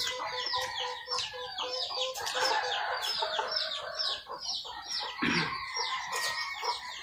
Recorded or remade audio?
recorded